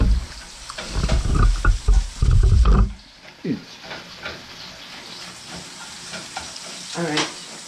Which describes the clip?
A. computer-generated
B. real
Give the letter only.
B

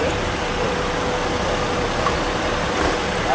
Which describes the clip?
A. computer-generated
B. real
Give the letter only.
B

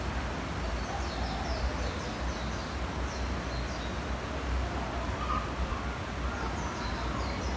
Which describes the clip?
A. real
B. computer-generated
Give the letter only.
A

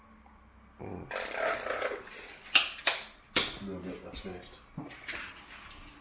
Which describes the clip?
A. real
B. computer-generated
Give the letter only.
A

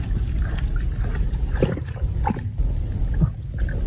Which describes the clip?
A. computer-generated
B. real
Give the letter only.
B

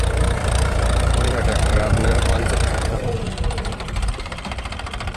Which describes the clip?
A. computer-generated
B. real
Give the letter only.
A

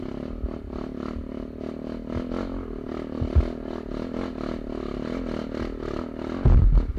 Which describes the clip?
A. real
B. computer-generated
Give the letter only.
A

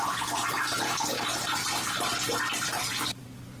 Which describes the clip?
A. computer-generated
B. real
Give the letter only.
A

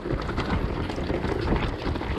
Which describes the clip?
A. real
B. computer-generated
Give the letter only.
A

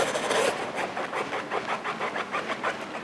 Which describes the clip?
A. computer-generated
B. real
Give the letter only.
B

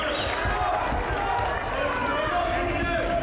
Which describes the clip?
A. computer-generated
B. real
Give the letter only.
B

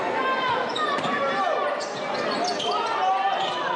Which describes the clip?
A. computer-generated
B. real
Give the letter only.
B